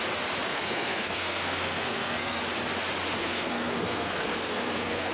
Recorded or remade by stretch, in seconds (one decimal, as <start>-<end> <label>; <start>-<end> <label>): 0.0-0.5 recorded; 0.5-2.4 remade; 2.4-3.2 recorded; 3.2-5.1 remade